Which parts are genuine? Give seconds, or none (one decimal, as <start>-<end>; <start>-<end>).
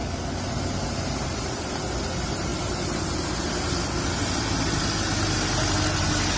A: 0.0-6.4